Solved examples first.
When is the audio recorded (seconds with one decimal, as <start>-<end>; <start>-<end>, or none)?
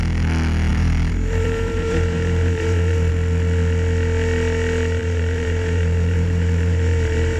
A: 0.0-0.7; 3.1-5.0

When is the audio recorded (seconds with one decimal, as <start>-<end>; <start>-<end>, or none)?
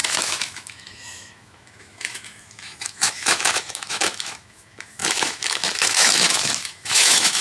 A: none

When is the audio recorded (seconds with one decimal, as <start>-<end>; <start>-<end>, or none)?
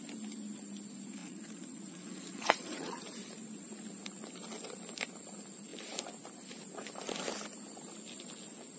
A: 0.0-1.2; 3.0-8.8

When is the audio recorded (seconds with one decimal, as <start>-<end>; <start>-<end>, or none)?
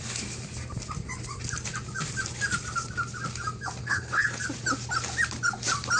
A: 0.0-3.8; 4.4-6.0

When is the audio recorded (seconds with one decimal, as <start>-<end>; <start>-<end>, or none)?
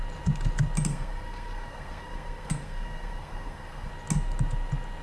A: 0.0-0.9; 3.9-5.0